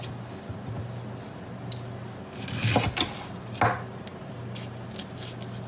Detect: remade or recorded recorded